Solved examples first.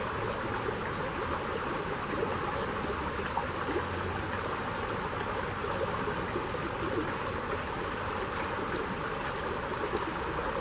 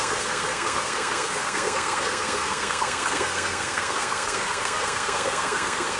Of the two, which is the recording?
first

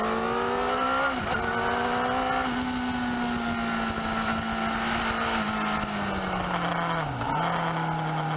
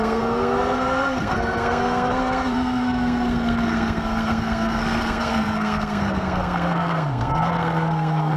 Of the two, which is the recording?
first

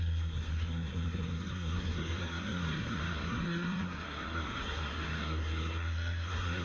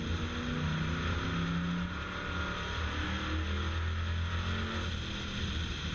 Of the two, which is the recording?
second